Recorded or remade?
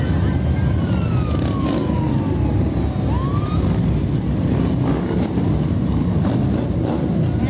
recorded